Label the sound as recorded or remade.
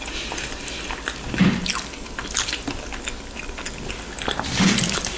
recorded